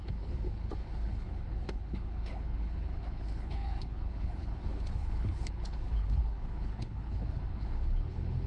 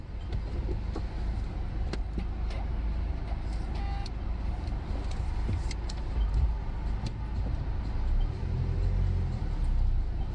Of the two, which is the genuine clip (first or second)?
second